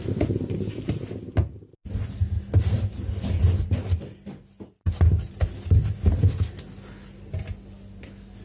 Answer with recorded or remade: recorded